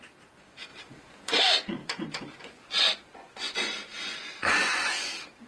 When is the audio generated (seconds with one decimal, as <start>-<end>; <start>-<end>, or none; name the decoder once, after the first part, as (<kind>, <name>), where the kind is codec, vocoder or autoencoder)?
0.7-1.4 (vocoder, Vocos); 1.8-5.1